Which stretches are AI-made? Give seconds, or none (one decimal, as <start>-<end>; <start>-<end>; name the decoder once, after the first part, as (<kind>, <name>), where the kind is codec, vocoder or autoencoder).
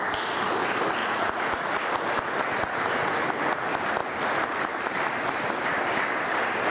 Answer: 1.0-1.9 (vocoder, Vocos)